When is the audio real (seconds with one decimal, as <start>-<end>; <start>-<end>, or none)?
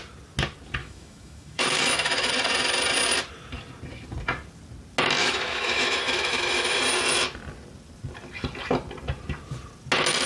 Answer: 0.0-0.8; 2.3-5.2; 6.8-10.3